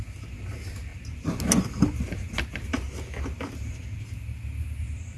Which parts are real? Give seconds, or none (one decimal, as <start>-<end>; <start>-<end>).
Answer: 0.0-5.2

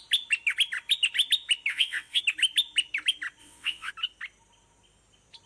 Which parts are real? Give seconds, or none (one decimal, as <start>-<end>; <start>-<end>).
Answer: 0.0-1.7; 2.2-3.4; 3.9-5.5

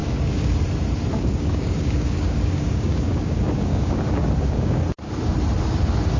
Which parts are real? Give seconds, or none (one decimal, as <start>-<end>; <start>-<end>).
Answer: 0.6-1.1; 4.8-6.2

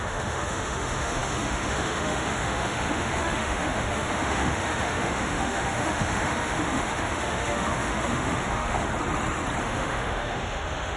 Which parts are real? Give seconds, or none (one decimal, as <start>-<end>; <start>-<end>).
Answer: 8.9-9.6

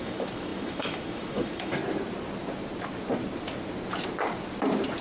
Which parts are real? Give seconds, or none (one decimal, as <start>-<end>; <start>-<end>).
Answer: 1.8-5.0